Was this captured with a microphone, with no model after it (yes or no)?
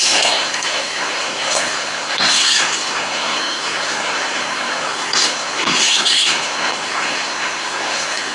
no